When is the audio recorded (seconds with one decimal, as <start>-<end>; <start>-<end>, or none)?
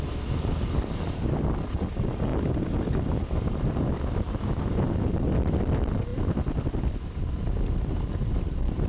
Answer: none